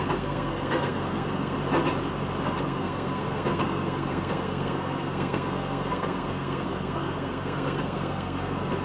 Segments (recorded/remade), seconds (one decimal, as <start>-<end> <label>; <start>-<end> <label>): 0.0-1.6 remade; 1.6-2.6 recorded; 2.6-8.8 remade